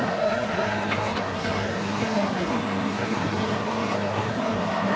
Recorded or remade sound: remade